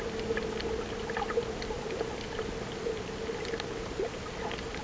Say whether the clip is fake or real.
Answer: real